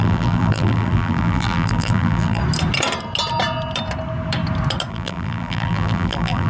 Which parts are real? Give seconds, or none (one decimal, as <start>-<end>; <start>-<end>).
2.4-4.9